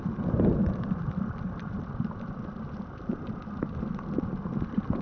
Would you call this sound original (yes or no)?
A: yes